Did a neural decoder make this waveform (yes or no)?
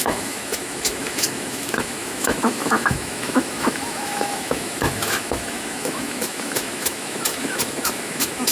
yes